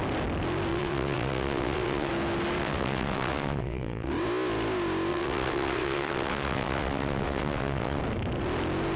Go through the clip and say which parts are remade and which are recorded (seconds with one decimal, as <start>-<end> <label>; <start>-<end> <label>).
0.0-0.7 recorded; 0.7-2.1 remade; 2.1-2.6 recorded; 2.6-4.1 remade; 4.1-5.1 recorded; 5.1-8.0 remade; 8.0-9.0 recorded